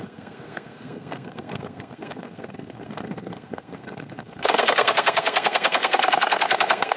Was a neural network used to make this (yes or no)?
yes